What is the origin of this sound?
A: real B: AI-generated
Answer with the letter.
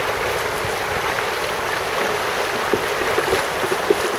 A